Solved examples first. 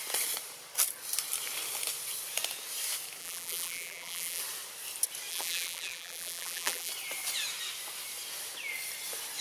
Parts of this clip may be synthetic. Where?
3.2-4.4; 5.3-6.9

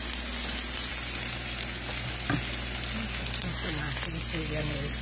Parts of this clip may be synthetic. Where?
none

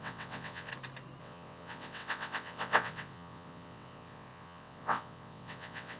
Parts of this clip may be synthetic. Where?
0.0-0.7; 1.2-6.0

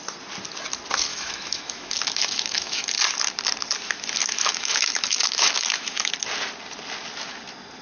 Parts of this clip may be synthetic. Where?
1.1-2.9; 4.2-6.1

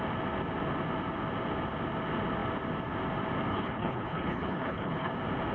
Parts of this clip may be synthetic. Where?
3.5-5.1

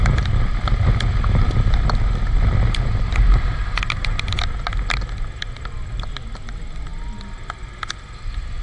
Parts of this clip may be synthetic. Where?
none

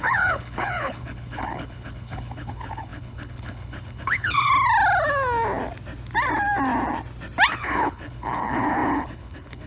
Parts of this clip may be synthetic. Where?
0.0-4.5; 7.5-9.7

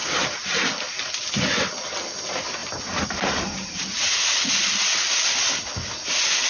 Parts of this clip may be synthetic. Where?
0.0-1.1; 2.6-4.5